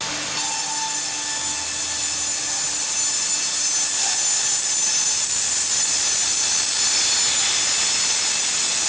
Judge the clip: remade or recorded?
recorded